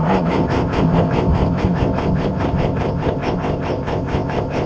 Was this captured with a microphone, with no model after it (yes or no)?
no